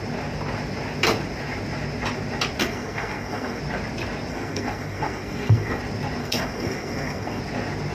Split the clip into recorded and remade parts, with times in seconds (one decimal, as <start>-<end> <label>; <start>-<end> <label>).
0.0-2.6 recorded; 2.6-3.6 remade; 3.6-4.3 recorded; 4.3-5.8 remade; 5.8-6.2 recorded; 6.2-7.4 remade; 7.4-7.9 recorded